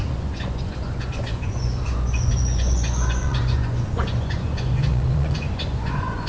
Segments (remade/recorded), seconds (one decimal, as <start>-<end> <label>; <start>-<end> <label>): 0.0-6.3 remade